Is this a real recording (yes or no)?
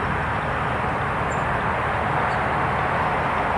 yes